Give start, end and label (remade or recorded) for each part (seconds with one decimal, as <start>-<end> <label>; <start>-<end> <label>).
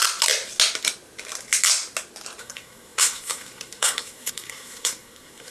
0.0-2.4 recorded; 2.4-5.5 remade